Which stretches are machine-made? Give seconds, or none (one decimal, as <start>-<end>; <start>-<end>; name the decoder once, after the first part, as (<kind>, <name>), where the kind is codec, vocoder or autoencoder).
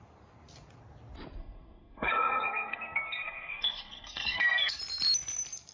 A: 1.4-4.8 (codec, SNAC)